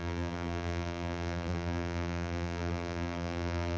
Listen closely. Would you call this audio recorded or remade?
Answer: remade